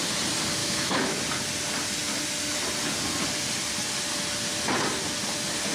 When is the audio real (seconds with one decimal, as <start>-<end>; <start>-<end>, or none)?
0.0-0.6; 1.2-5.7

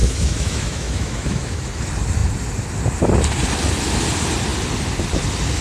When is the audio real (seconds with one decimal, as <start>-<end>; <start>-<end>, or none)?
1.6-5.6

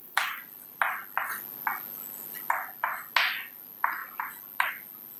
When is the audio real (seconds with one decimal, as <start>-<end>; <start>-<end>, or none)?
0.0-5.2

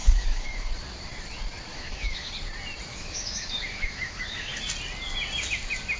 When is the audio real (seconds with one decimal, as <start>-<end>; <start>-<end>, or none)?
0.7-1.7; 2.3-2.9; 4.6-6.0

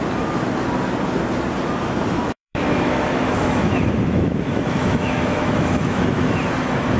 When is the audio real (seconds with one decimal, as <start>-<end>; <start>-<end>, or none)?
0.0-2.2; 6.4-7.0

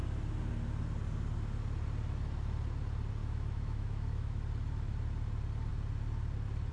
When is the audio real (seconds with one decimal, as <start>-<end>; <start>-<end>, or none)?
0.0-3.2; 4.4-6.7

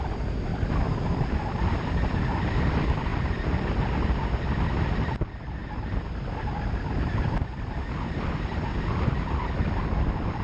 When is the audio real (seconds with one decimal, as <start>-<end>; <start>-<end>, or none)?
0.0-10.4

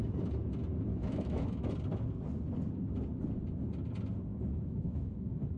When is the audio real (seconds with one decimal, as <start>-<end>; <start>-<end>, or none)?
0.0-0.9; 1.7-4.3